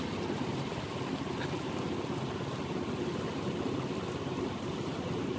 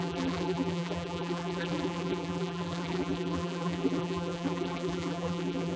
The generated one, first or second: second